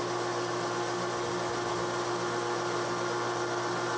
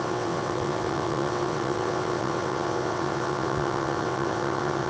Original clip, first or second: first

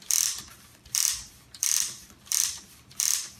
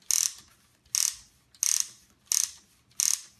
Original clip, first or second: second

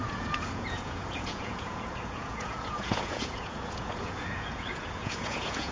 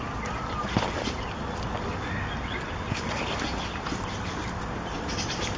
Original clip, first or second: second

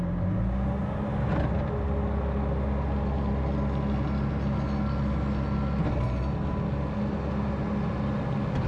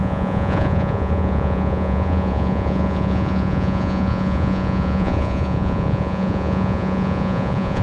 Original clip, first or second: first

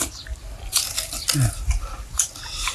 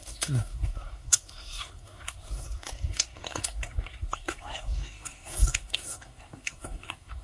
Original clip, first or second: first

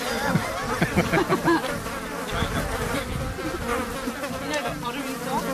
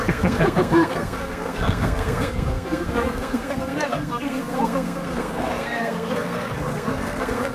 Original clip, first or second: first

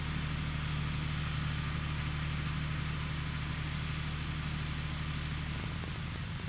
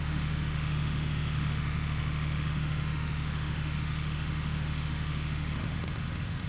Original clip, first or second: first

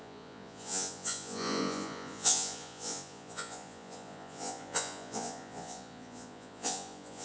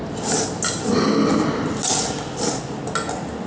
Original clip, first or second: second